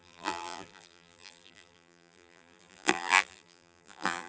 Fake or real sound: fake